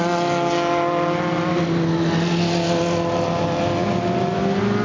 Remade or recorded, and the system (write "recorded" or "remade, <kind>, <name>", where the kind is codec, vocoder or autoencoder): recorded